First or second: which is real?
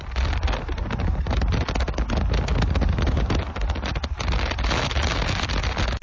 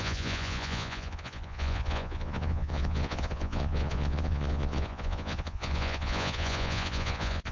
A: first